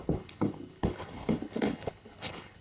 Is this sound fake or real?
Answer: fake